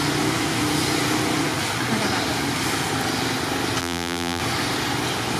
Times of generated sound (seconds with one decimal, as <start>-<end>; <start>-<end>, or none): 3.8-4.4